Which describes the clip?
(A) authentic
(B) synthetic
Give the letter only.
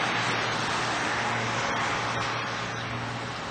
A